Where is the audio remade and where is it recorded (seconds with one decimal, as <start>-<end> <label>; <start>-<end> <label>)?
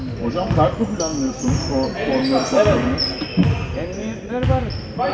0.0-5.1 recorded